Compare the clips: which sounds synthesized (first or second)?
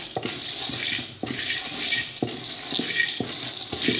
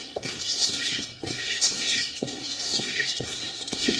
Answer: second